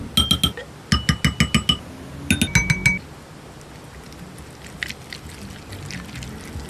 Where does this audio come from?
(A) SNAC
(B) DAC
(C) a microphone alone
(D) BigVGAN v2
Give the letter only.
C